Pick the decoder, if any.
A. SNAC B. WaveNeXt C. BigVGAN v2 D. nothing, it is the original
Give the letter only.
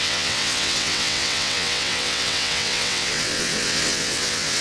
B